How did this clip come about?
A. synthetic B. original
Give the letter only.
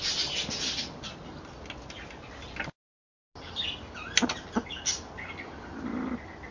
B